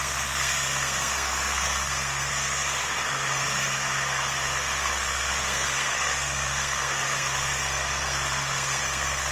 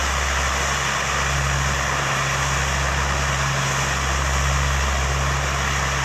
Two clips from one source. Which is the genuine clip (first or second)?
second